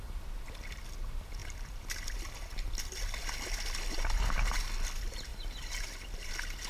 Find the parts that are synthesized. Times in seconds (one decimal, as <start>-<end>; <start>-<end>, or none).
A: 1.4-4.4; 5.3-5.8